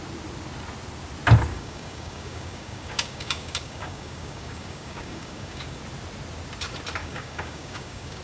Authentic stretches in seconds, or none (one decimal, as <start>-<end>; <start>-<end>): 0.0-1.5; 5.8-7.0